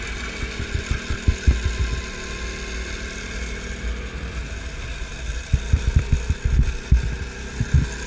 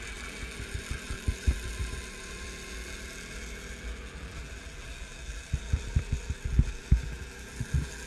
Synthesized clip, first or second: second